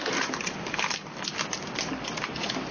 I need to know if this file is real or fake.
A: real